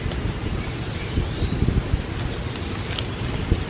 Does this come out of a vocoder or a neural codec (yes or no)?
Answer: no